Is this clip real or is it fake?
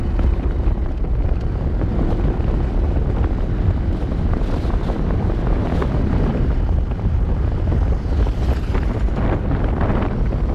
real